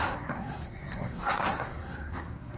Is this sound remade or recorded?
remade